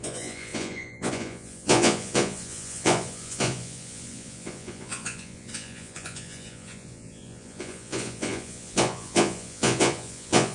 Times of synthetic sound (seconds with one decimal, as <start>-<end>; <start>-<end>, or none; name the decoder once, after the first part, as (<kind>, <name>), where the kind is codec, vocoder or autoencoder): 0.0-10.5 (vocoder, Vocos)